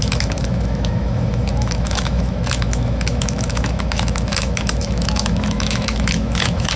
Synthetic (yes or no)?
yes